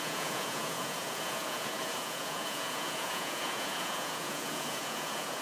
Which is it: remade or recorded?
remade